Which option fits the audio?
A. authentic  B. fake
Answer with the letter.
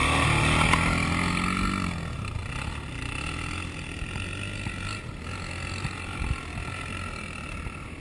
A